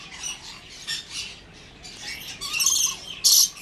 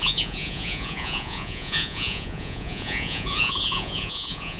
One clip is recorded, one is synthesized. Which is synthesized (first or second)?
second